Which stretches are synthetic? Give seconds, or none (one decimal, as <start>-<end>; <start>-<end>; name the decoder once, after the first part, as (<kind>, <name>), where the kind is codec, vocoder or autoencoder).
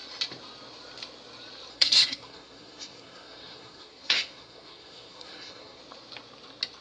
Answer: 1.7-5.8 (codec, SNAC)